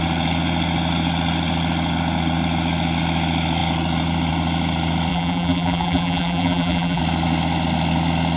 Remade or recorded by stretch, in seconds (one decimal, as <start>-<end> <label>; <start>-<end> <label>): 0.0-5.1 recorded; 5.1-7.0 remade; 7.0-8.4 recorded